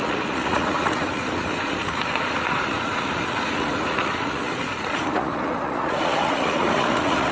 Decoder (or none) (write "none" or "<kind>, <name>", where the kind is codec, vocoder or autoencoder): vocoder, Vocos